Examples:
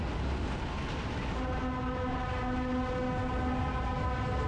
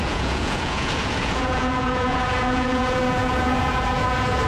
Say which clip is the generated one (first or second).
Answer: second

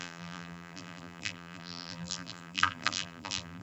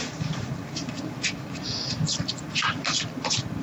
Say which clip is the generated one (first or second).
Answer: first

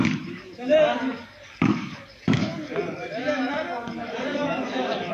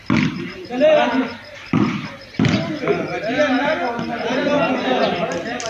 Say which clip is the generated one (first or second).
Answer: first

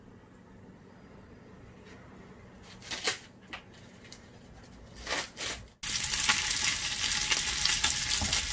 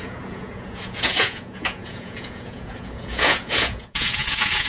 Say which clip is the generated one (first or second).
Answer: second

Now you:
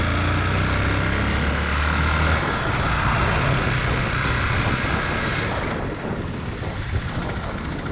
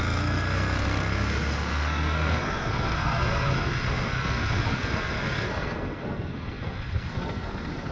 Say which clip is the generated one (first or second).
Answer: second